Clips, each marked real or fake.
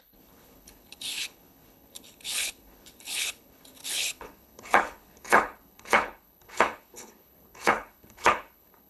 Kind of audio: fake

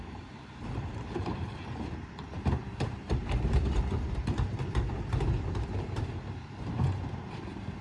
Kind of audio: fake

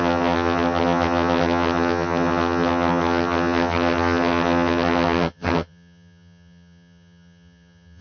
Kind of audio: fake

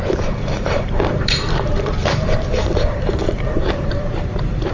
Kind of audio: fake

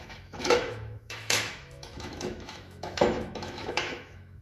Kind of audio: fake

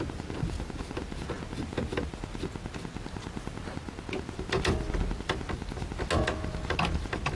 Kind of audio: real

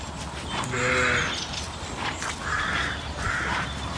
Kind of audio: real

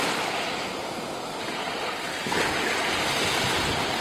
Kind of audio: real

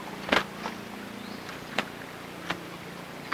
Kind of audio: real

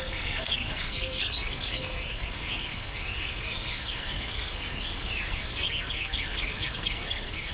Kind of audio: fake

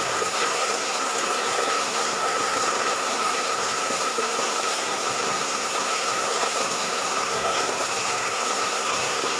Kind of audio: fake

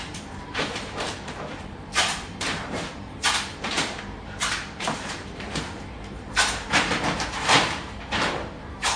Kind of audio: fake